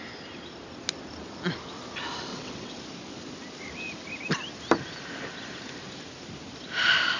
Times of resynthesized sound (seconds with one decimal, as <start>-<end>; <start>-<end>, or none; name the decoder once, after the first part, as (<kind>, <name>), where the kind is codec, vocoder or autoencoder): 2.3-2.8 (vocoder, WaveNeXt)